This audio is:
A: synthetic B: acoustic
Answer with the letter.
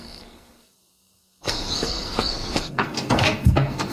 A